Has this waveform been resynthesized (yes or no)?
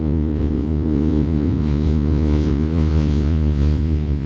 yes